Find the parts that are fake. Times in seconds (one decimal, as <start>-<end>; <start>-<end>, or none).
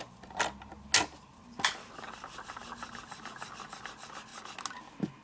none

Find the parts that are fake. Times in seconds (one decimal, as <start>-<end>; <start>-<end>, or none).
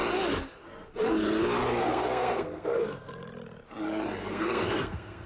1.9-3.1; 4.2-5.3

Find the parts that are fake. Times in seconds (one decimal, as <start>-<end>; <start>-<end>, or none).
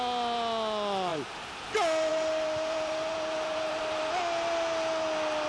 1.1-1.7; 2.1-4.2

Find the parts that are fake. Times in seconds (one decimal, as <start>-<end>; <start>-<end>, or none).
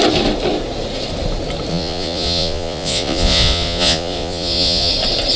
1.7-4.9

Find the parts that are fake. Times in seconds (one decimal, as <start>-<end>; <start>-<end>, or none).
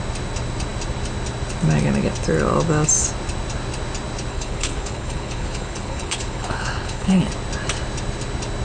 4.3-7.2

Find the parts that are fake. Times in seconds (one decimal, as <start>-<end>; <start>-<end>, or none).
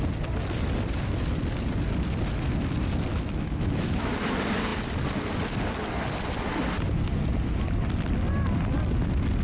3.1-4.1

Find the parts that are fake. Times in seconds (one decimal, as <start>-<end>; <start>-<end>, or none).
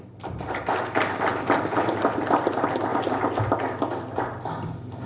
none